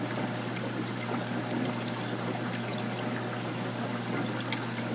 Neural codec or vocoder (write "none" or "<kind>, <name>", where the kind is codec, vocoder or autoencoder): vocoder, BigVGAN v2